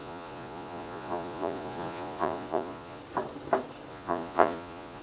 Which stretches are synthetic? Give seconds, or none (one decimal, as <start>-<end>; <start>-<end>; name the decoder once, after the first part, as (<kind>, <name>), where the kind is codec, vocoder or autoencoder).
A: 0.0-3.0 (vocoder, Vocos); 3.9-5.0